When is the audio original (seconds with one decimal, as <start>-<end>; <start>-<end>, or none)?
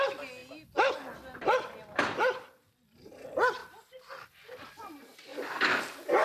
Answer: 0.0-5.3; 5.8-6.2